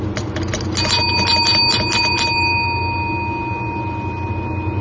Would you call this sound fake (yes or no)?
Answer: no